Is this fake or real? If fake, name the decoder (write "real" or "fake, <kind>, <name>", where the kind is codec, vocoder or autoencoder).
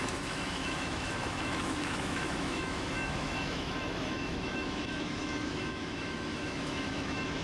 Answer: fake, autoencoder, DAC-VAE